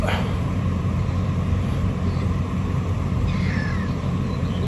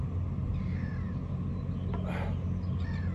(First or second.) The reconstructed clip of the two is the first